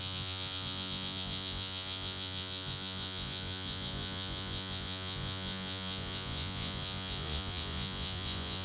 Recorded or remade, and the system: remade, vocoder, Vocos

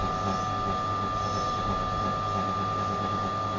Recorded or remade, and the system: recorded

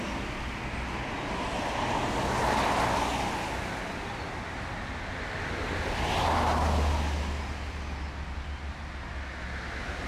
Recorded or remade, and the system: recorded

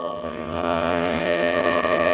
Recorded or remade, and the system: remade, vocoder, HiFi-GAN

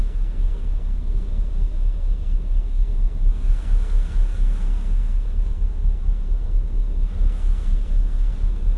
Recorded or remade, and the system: remade, codec, SNAC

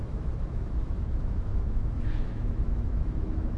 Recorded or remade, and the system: remade, autoencoder, DAC-VAE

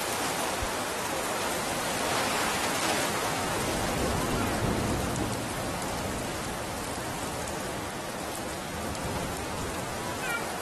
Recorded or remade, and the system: recorded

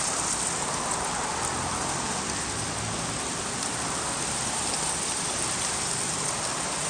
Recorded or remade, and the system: recorded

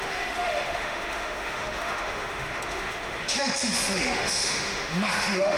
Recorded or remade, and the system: remade, autoencoder, DAC-VAE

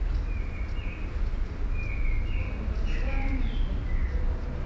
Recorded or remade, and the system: recorded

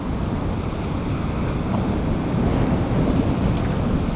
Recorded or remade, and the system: recorded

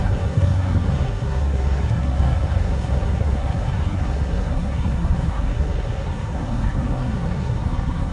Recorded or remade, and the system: remade, codec, SNAC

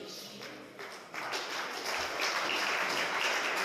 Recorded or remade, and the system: recorded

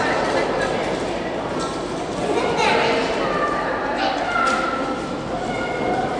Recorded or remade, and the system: recorded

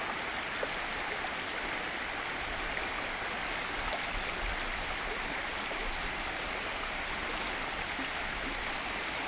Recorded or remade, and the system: recorded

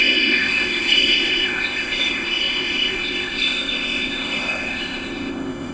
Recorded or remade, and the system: remade, codec, ZipCodec